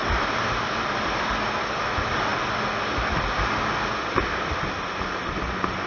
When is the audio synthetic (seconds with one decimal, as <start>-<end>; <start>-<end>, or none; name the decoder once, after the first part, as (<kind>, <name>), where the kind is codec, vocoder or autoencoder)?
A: none